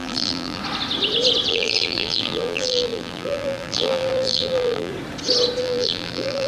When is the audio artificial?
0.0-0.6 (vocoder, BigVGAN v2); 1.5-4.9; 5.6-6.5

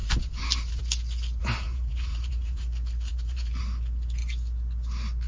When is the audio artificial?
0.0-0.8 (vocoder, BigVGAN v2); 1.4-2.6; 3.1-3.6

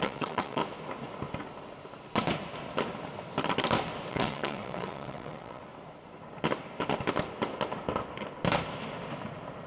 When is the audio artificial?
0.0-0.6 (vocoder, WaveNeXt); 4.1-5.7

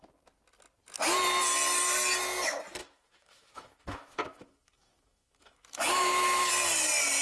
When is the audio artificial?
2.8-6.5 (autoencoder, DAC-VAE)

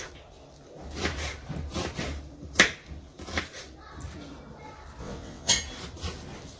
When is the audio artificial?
5.0-5.6 (vocoder, WaveNeXt)

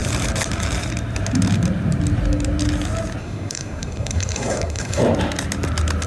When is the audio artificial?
3.2-5.0 (codec, SNAC)

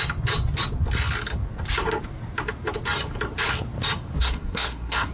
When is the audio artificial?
4.2-5.1 (codec, SNAC)